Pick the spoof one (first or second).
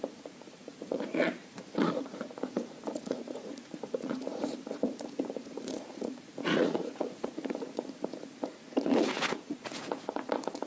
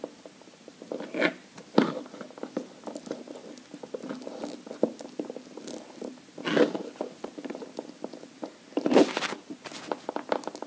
first